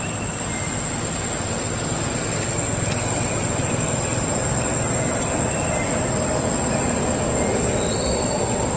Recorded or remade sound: recorded